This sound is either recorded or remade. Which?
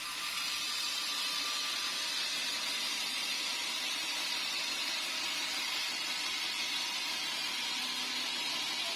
recorded